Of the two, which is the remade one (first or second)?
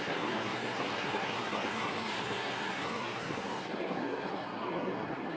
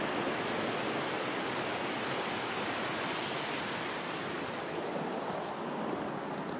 first